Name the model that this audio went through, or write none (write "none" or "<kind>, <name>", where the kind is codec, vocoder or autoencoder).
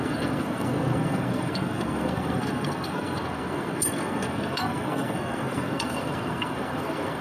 codec, SNAC